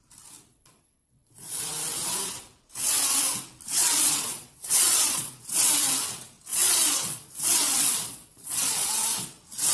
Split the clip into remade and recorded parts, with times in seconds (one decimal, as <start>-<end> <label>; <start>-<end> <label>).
0.0-0.5 recorded; 0.5-1.6 remade; 1.6-3.8 recorded; 3.8-5.6 remade; 5.6-6.5 recorded; 6.5-8.9 remade; 8.9-9.7 recorded